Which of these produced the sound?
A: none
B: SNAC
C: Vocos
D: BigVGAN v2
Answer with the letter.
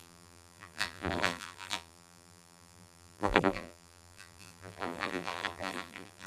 D